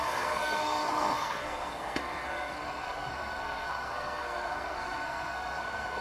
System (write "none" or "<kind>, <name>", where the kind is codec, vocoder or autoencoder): codec, SNAC